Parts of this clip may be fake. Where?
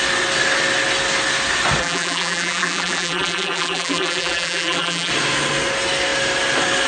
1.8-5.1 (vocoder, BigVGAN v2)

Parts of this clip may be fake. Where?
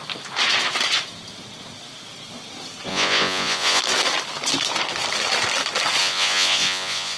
2.9-3.8 (vocoder, Vocos); 6.0-7.2